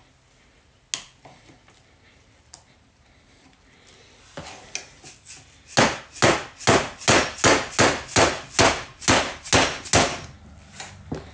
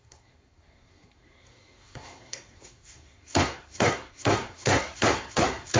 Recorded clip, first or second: first